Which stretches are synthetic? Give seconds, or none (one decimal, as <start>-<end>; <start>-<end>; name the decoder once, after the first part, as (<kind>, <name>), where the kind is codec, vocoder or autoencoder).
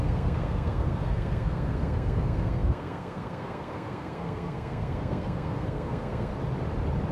0.0-6.3 (codec, SNAC)